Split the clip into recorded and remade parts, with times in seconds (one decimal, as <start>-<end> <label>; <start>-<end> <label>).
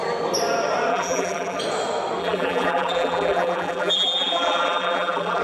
0.0-0.9 recorded; 0.9-1.6 remade; 1.6-2.2 recorded; 2.2-5.4 remade